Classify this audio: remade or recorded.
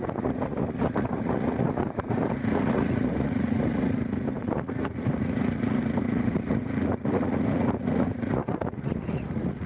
remade